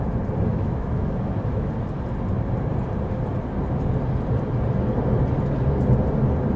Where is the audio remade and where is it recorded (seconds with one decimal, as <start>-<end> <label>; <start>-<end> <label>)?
0.0-0.5 recorded; 0.5-1.7 remade; 1.7-6.6 recorded